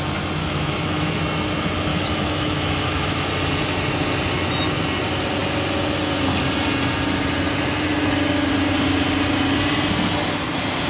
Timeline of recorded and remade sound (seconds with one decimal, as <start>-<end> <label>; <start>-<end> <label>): 0.0-0.4 recorded; 0.4-1.2 remade; 1.2-1.9 recorded; 1.9-3.3 remade; 3.3-10.9 recorded